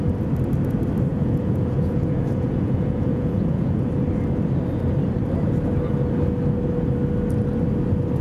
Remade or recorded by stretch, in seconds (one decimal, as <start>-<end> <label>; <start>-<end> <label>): 0.0-1.1 recorded; 1.1-3.9 remade; 3.9-8.2 recorded